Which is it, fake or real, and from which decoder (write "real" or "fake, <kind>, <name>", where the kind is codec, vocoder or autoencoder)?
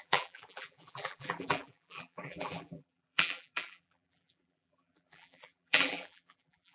fake, vocoder, BigVGAN v2